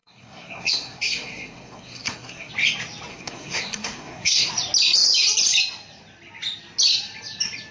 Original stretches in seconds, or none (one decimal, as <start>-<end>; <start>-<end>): 2.5-3.1; 4.5-7.7